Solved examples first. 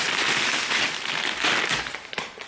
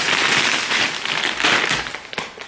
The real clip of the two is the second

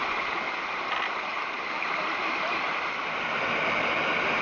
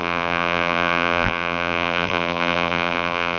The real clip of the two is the first